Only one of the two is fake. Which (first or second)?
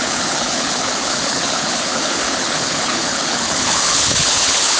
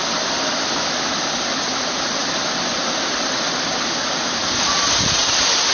first